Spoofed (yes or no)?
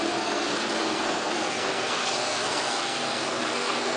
yes